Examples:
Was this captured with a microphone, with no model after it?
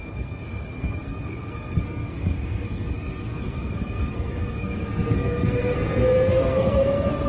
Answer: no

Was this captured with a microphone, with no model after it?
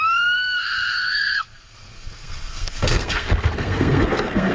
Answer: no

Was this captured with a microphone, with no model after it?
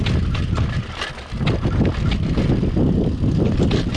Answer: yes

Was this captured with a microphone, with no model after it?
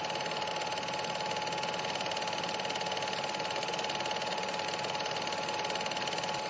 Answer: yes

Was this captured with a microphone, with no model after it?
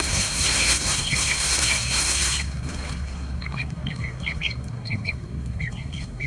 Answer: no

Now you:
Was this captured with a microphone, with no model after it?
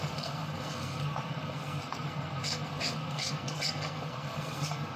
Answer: no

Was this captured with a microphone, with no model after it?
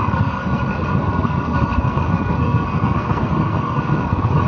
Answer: no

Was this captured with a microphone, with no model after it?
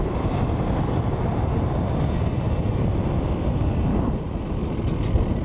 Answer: yes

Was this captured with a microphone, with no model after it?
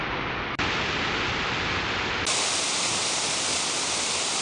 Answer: yes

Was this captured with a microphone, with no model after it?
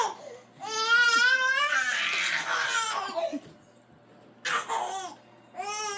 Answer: yes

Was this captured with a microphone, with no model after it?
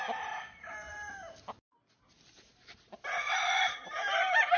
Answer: yes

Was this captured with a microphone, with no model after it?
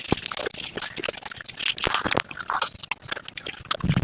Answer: yes